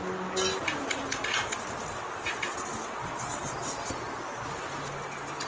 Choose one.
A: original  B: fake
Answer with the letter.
A